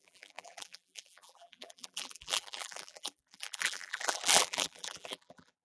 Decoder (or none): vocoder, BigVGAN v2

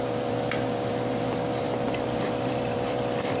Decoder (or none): vocoder, BigVGAN v2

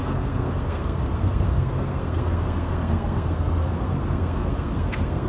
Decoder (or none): codec, SNAC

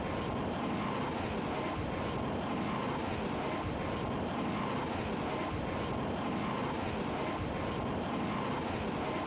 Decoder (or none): none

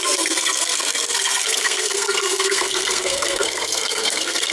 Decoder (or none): codec, SNAC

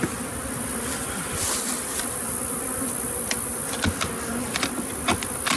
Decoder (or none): none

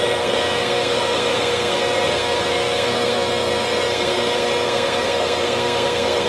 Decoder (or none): codec, SNAC